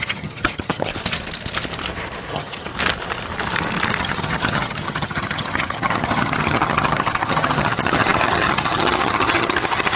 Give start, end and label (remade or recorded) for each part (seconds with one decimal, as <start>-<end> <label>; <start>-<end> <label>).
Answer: 0.0-0.9 remade; 0.9-2.3 recorded; 2.3-2.7 remade; 2.7-4.0 recorded; 4.0-10.0 remade

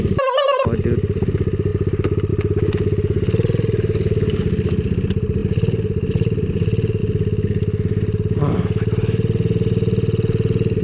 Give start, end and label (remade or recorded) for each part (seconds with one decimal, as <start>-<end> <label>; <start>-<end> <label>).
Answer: 0.0-10.8 recorded